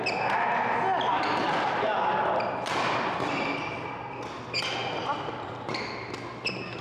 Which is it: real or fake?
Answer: real